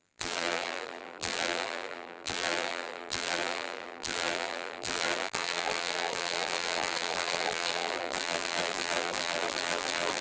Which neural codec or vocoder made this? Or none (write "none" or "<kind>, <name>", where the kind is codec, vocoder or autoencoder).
vocoder, BigVGAN v2